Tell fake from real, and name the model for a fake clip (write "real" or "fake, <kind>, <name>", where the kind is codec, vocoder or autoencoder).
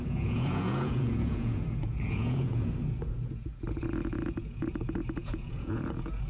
fake, vocoder, Vocos